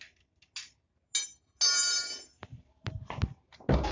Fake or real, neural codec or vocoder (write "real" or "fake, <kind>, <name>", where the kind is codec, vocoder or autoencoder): real